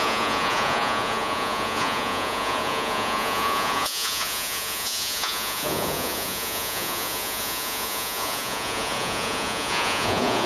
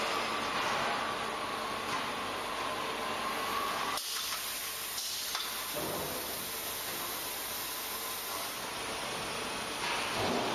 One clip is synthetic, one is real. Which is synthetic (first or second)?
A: first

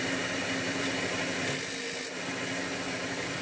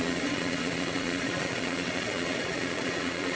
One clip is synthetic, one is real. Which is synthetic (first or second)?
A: second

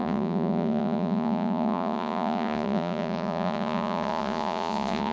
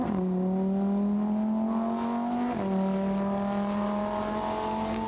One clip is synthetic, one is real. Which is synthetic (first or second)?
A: first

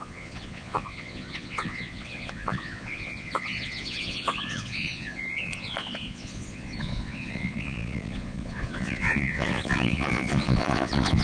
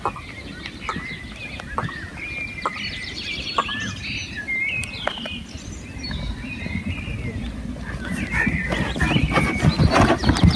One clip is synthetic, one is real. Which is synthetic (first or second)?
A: first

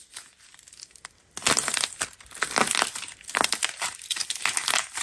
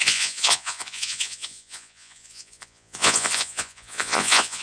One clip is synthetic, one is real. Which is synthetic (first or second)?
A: second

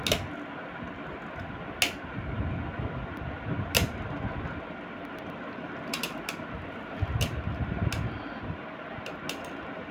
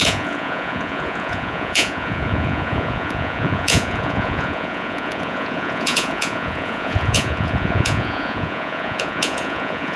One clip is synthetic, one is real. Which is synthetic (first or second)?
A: second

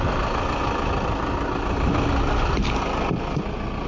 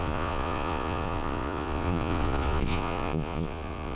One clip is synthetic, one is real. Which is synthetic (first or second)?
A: second